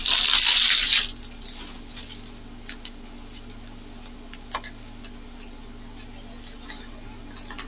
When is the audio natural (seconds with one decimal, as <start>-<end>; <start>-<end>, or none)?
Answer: 0.0-7.7